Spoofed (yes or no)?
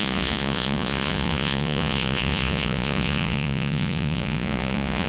yes